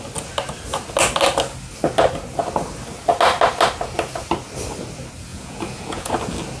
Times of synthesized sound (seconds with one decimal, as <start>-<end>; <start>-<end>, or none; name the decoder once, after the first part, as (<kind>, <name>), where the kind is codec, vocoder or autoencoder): 5.3-6.1 (vocoder, Vocos)